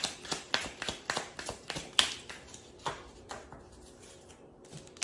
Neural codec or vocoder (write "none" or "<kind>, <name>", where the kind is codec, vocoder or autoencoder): none